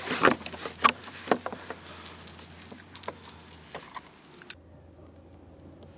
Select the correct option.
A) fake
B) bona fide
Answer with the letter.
B